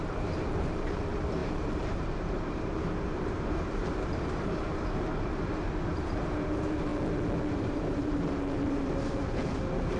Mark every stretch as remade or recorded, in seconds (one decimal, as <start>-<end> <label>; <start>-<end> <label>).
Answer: 0.0-6.9 remade; 6.9-7.6 recorded; 7.6-10.0 remade